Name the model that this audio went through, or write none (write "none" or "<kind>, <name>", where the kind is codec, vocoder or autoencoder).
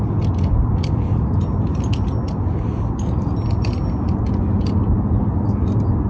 none